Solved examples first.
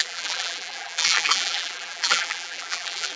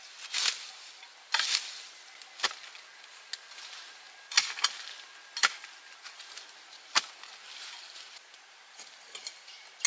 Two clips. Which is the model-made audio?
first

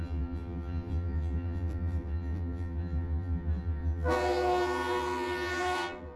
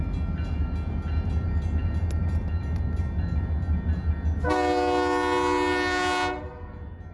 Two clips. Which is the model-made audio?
first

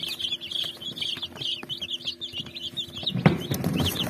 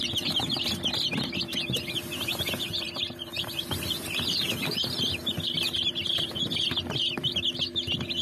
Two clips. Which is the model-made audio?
second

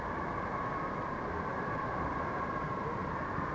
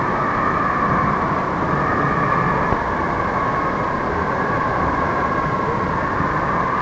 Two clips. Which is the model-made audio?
first